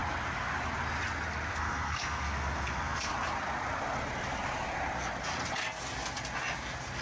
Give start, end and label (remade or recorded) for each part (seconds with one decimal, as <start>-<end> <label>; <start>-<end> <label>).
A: 0.0-1.5 recorded; 1.5-3.1 remade; 3.1-7.0 recorded